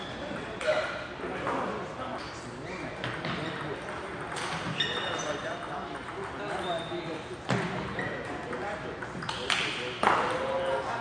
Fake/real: real